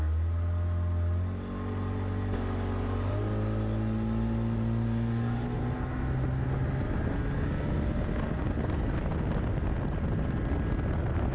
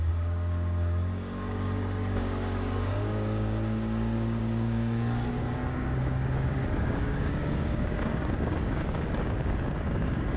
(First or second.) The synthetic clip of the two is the second